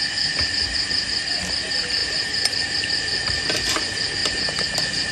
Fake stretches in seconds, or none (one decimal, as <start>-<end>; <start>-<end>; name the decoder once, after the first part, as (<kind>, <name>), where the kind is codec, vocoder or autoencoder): 2.0-3.8 (vocoder, BigVGAN v2); 4.2-5.1